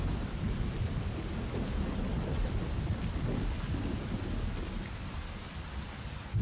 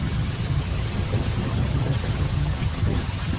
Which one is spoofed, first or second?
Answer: second